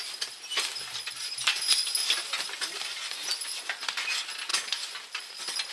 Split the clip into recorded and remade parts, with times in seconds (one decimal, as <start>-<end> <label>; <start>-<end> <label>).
0.0-5.7 recorded